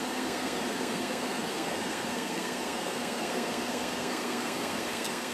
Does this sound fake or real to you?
fake